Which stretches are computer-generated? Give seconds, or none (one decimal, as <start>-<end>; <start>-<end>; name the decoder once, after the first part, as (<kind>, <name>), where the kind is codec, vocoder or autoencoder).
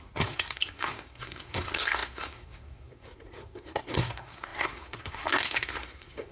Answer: 0.0-6.3 (codec, SNAC)